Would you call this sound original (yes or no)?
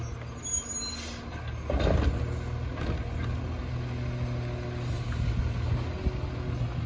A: yes